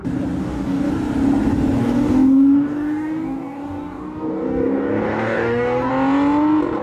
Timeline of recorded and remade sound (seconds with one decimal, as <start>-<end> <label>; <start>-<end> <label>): 0.0-0.4 recorded; 0.4-0.9 remade; 0.9-1.8 recorded; 1.8-5.9 remade; 5.9-6.8 recorded